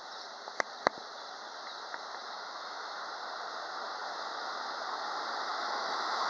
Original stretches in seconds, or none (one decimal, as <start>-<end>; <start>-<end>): 0.0-2.2; 3.0-5.5